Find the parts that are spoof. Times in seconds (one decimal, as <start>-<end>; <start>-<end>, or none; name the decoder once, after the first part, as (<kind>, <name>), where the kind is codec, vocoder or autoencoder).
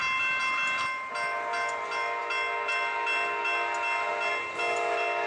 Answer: none